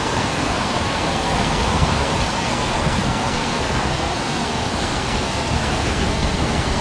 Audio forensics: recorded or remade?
remade